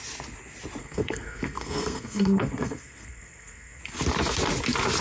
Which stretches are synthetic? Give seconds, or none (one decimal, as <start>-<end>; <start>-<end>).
0.8-3.8